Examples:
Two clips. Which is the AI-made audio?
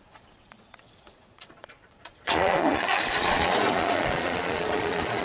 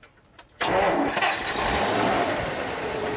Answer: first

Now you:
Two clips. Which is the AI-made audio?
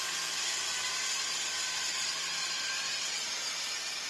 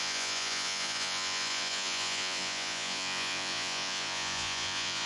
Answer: second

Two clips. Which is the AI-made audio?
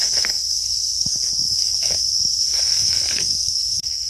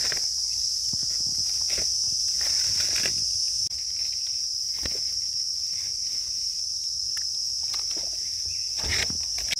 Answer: first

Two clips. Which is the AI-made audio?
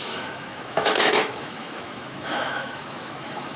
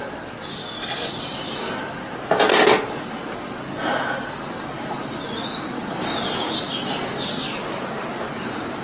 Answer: first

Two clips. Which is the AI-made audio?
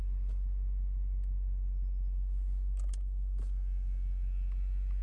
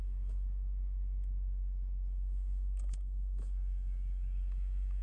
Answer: second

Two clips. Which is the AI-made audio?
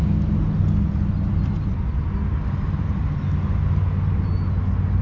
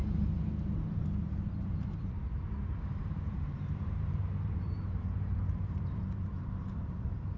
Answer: second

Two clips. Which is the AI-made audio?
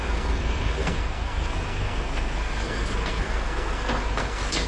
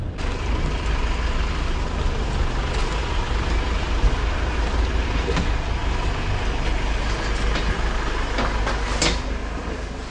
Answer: first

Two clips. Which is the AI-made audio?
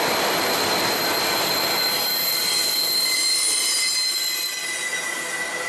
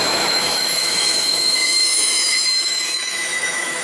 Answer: second